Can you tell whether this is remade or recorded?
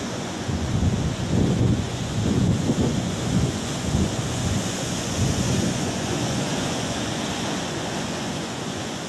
remade